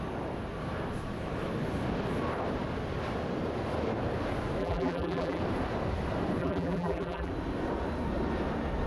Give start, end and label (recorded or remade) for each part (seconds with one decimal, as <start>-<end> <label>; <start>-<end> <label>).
0.0-4.6 recorded; 4.6-5.4 remade; 5.4-6.4 recorded; 6.4-7.3 remade; 7.3-8.9 recorded